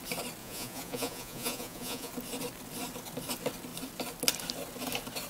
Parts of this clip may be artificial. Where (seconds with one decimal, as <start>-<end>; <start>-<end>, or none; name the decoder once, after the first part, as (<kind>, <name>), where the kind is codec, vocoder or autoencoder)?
0.4-2.1 (vocoder, Vocos)